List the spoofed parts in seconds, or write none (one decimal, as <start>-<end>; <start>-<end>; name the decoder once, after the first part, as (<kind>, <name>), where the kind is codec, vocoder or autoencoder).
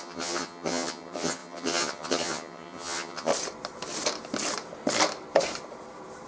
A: 0.0-3.3 (vocoder, HiFi-GAN)